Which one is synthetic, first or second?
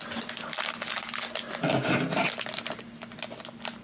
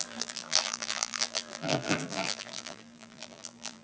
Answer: second